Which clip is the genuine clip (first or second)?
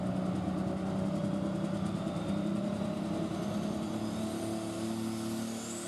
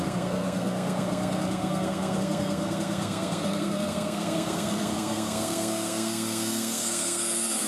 first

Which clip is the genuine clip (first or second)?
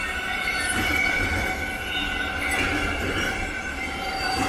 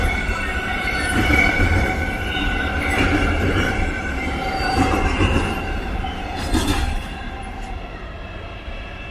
first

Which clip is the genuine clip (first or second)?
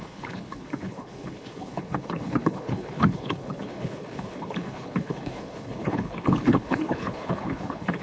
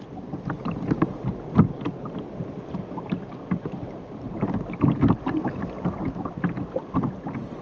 second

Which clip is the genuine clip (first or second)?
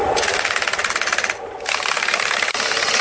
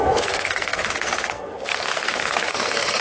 first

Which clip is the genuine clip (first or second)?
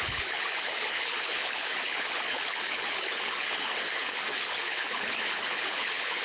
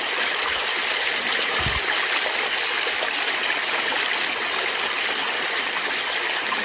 second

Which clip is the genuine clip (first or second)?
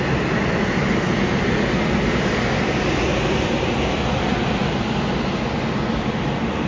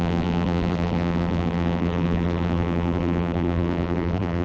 first